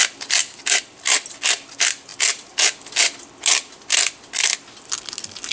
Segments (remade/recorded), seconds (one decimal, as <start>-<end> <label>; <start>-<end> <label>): 0.0-5.5 recorded